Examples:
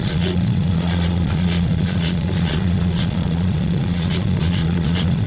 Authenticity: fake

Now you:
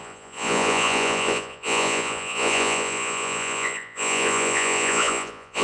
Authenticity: fake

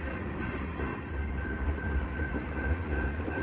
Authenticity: fake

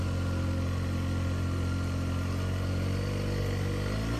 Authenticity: real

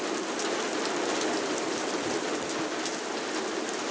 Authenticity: real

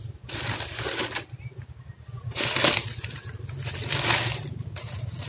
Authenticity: real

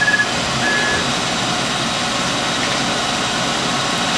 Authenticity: real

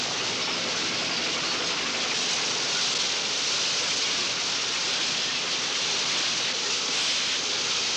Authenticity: real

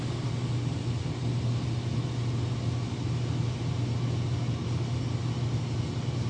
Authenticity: real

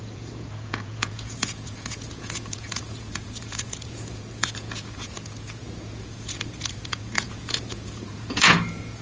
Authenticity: fake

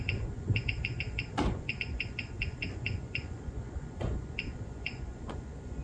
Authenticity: fake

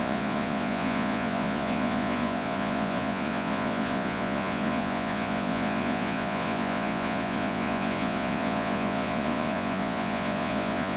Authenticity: fake